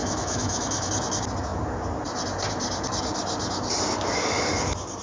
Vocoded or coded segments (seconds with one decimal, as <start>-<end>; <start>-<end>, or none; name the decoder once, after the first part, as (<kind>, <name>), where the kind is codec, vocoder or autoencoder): 0.0-0.9 (autoencoder, DAC-VAE)